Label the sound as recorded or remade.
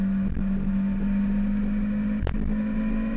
recorded